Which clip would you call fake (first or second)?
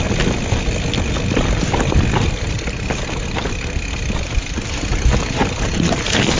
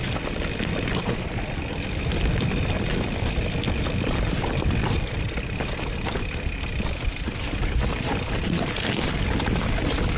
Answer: second